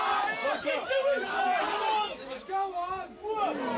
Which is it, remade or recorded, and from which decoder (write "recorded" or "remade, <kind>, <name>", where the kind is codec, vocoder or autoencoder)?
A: recorded